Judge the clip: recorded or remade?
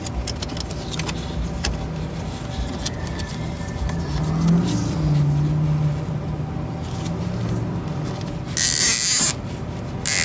recorded